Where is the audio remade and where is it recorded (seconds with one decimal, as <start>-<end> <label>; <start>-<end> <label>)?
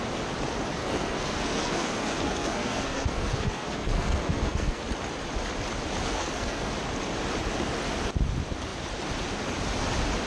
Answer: 0.0-0.8 recorded; 0.8-4.8 remade; 4.8-6.0 recorded; 6.0-6.7 remade; 6.7-10.3 recorded